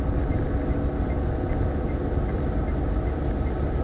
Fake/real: real